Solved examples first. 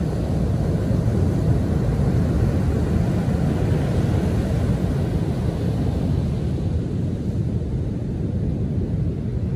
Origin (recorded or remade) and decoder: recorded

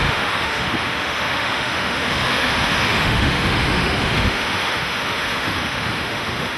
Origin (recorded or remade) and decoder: remade, autoencoder, DAC-VAE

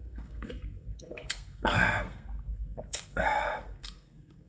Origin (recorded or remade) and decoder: remade, codec, SNAC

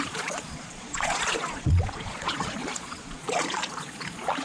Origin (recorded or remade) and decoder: remade, vocoder, Vocos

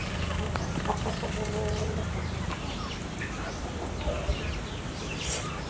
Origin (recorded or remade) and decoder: recorded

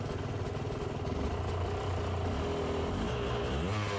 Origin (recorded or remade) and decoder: recorded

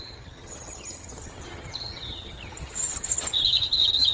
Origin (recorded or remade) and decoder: remade, vocoder, HiFi-GAN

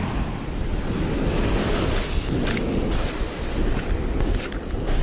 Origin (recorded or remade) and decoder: recorded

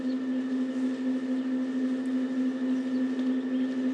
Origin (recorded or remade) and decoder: recorded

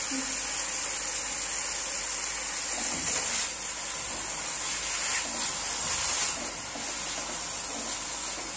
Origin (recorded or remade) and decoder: recorded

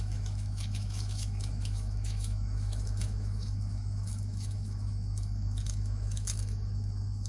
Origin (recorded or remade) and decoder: remade, autoencoder, DAC-VAE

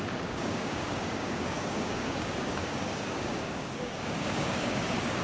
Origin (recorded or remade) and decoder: remade, codec, DAC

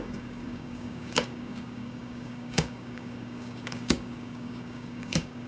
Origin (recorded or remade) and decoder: remade, codec, DAC